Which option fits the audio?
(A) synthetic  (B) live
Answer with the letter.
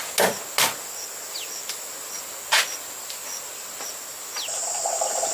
B